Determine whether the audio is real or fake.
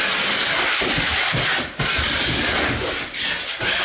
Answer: real